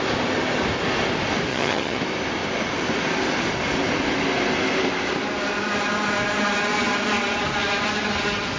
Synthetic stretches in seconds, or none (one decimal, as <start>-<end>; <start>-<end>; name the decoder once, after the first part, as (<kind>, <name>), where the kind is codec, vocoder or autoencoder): 1.5-2.0 (vocoder, HiFi-GAN)